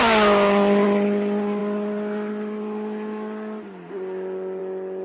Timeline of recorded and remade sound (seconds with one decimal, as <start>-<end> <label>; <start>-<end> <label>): 0.0-5.0 recorded